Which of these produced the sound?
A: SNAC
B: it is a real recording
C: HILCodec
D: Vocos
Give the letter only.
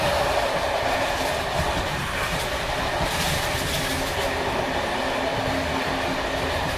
B